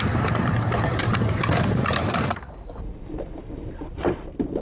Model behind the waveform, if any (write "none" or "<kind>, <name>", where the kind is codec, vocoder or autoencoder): vocoder, BigVGAN v2